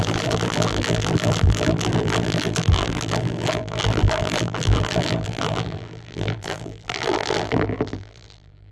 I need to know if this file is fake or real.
fake